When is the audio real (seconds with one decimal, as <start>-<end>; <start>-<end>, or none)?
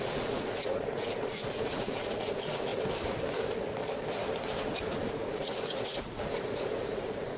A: 2.7-5.0